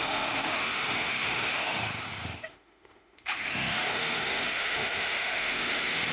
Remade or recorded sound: remade